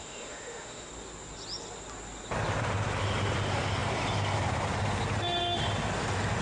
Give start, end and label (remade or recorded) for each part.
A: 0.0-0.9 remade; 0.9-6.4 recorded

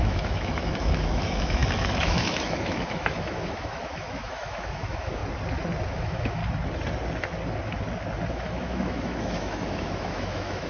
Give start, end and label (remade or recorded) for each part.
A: 0.0-5.2 remade; 5.2-5.9 recorded; 5.9-6.4 remade; 6.4-8.3 recorded; 8.3-10.7 remade